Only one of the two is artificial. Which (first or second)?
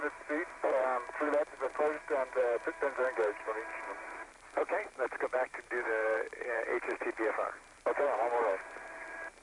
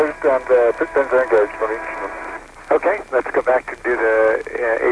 first